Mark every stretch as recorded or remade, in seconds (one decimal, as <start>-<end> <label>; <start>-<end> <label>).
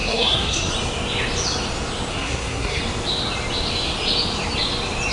0.0-0.7 remade; 0.7-2.1 recorded; 2.1-2.8 remade; 2.8-5.1 recorded